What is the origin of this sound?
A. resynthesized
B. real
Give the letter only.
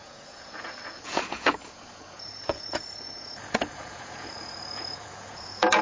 A